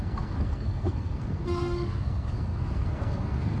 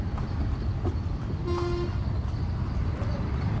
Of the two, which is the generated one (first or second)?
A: first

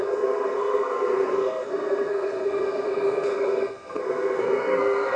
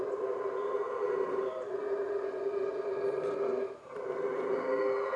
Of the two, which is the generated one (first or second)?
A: first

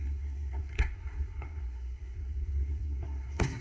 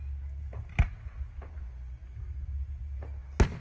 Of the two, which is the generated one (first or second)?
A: first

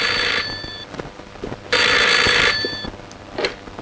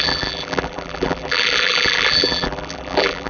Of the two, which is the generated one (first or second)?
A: second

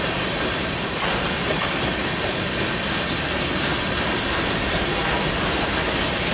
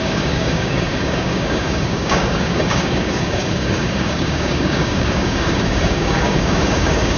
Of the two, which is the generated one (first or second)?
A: second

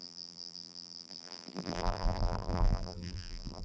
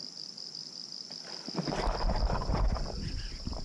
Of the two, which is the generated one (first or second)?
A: first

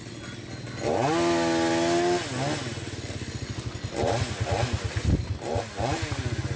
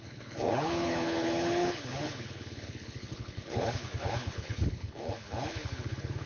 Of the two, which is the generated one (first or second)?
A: second